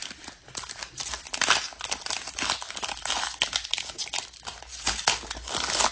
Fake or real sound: real